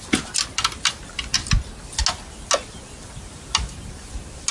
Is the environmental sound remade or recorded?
recorded